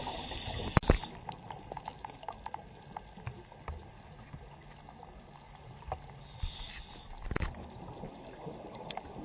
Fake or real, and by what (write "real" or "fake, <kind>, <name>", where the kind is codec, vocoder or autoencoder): real